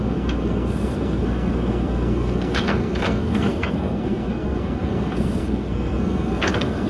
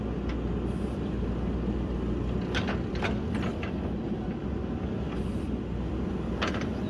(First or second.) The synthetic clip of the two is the first